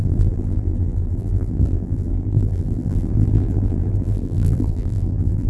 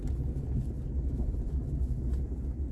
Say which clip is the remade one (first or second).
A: first